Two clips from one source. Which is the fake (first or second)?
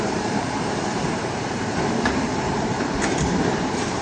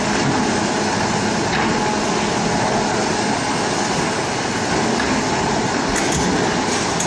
first